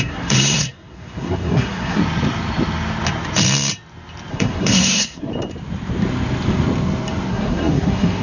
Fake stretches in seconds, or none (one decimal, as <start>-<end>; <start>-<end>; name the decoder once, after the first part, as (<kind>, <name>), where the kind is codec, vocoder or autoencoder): 0.0-2.0 (codec, SNAC); 4.3-5.3; 7.3-8.2